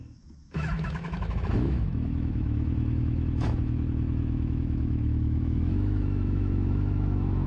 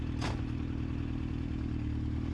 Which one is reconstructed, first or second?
first